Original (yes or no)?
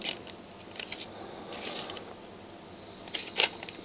yes